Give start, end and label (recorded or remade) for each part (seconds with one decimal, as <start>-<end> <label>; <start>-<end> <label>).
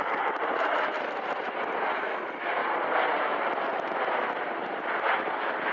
0.0-2.6 recorded; 2.6-3.6 remade; 3.6-5.7 recorded